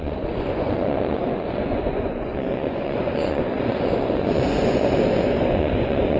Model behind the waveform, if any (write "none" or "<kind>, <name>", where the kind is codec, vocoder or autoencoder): vocoder, Vocos